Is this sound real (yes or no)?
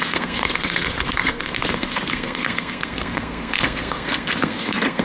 no